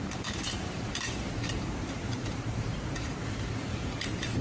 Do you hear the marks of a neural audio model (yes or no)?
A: yes